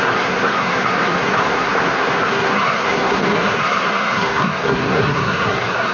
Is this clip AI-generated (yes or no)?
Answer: yes